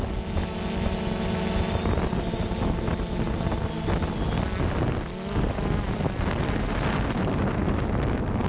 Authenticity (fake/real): real